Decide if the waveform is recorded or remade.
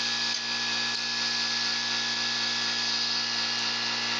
remade